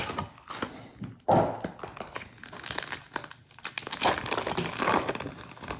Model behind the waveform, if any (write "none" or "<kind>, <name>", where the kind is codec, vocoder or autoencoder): none